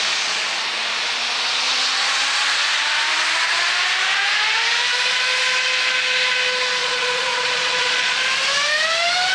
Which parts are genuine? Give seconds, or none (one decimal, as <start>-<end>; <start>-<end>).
0.0-6.8; 8.2-9.3